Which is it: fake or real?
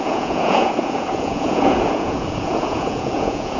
fake